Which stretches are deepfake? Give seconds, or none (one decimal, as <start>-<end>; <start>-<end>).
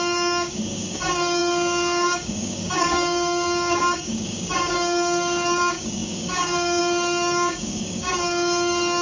0.0-9.0